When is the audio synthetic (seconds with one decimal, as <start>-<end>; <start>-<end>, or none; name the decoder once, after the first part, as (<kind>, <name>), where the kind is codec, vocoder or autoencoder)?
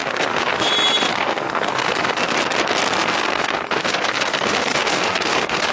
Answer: 0.0-0.7 (codec, SNAC); 1.1-2.4; 3.0-5.7